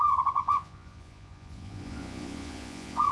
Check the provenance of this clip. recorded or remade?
remade